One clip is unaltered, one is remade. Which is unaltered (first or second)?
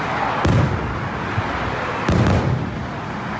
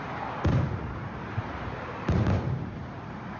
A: first